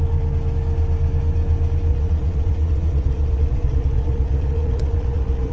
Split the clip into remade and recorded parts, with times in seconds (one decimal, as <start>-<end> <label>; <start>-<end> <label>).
0.0-1.9 recorded; 1.9-5.5 remade